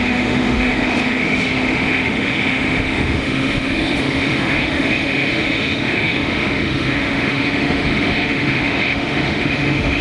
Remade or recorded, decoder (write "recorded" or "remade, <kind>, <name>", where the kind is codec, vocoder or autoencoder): remade, autoencoder, DAC-VAE